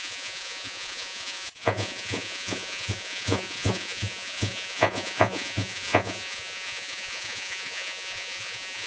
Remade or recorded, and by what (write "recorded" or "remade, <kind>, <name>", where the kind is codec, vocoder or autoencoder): remade, vocoder, Vocos